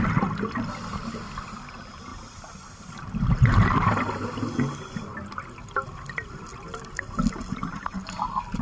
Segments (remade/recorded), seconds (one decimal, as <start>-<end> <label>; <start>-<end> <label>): 0.0-8.6 recorded